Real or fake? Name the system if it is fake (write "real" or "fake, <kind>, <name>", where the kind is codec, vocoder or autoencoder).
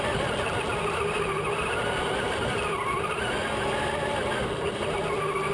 real